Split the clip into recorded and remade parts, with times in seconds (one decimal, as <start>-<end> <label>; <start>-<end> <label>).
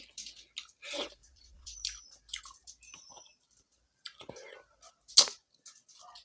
0.0-1.2 recorded; 1.2-1.7 remade; 1.7-6.2 recorded